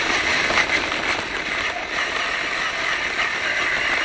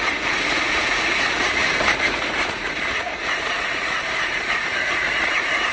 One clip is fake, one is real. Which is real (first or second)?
first